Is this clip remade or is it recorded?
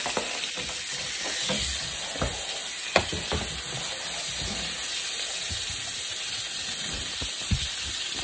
recorded